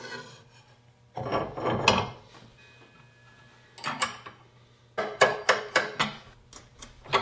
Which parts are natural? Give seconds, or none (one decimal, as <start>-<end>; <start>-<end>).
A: 0.0-7.2